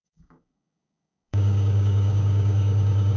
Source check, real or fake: fake